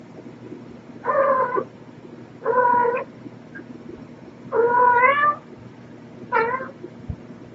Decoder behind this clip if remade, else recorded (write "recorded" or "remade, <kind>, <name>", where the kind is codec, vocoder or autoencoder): recorded